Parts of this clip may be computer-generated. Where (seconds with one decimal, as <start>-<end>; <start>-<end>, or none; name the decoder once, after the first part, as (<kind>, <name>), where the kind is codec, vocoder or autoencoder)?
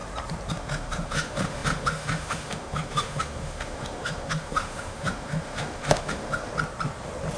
0.5-6.5 (autoencoder, DAC-VAE)